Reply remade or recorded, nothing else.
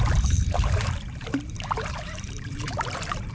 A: remade